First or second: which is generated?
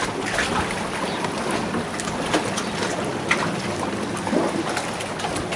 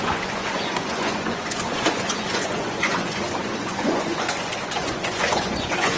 second